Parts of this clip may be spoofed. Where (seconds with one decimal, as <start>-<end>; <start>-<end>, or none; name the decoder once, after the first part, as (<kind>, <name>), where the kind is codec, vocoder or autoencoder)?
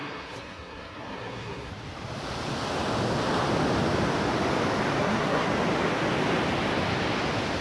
0.0-1.7 (codec, SNAC); 5.0-5.5